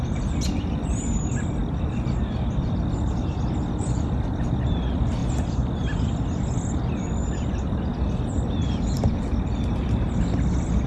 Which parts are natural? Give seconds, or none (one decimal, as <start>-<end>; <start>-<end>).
0.0-10.9